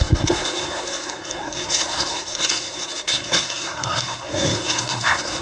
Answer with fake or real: fake